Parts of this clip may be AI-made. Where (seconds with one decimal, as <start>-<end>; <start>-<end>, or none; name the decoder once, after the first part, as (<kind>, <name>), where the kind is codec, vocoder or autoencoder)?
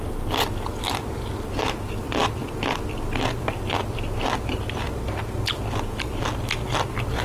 none